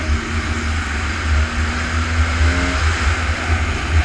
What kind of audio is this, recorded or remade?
recorded